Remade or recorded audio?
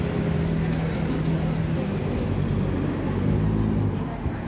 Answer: recorded